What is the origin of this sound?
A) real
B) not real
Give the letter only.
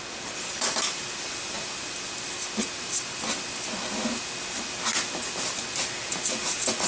A